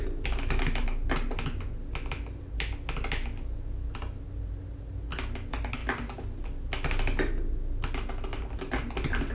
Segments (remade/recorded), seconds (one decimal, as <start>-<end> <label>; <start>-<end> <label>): 0.0-9.3 recorded